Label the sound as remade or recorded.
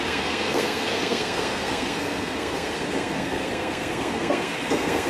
remade